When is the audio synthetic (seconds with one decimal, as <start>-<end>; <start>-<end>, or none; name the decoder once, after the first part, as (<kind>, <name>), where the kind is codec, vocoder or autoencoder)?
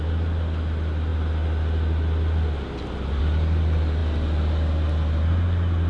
none